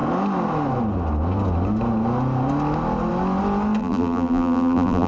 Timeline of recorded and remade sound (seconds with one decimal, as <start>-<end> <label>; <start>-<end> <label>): 0.0-3.8 recorded; 3.8-5.1 remade